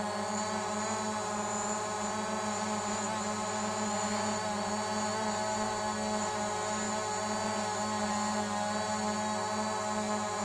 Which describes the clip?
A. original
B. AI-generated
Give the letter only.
A